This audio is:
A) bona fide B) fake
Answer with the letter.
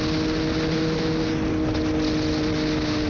A